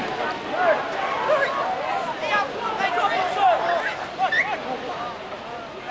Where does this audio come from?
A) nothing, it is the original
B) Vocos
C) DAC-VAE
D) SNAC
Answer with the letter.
A